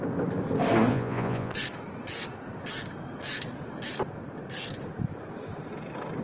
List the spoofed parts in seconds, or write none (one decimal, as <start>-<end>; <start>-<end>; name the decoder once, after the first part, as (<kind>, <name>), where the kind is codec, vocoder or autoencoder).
0.9-1.5 (vocoder, Vocos)